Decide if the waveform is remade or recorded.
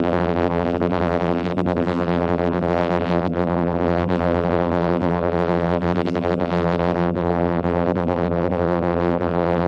remade